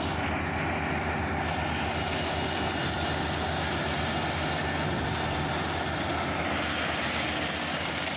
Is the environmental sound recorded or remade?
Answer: recorded